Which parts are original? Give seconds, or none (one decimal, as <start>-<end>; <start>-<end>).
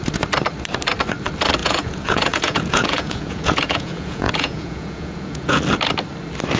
0.0-1.6; 5.6-6.6